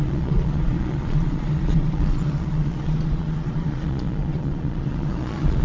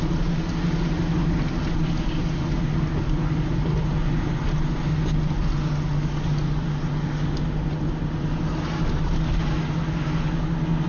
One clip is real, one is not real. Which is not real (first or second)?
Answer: first